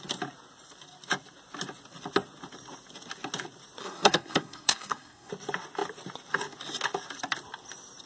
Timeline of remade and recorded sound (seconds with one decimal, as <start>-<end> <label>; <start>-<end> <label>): 0.0-3.8 recorded; 3.8-5.3 remade; 5.3-8.1 recorded